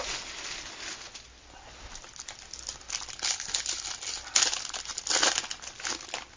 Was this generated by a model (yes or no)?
no